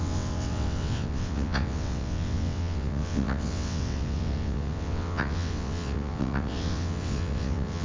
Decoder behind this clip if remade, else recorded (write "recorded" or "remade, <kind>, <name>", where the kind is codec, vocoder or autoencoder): remade, vocoder, WaveNeXt